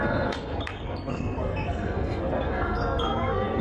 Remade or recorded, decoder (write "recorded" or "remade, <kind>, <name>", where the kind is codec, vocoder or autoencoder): remade, codec, SNAC